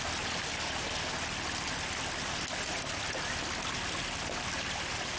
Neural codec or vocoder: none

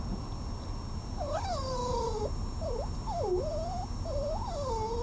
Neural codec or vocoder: none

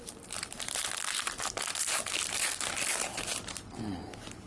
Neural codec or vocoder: none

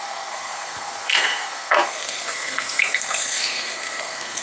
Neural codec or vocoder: codec, SNAC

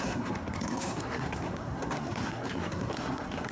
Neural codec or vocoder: codec, SNAC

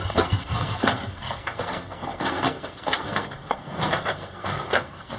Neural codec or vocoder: codec, SNAC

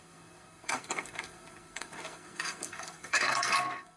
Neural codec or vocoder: codec, SNAC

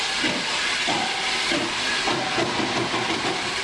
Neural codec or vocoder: none